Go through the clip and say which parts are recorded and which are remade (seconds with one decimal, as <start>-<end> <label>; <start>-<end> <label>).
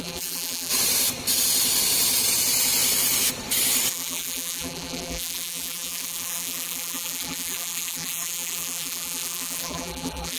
0.0-0.7 remade; 0.7-3.9 recorded; 3.9-10.4 remade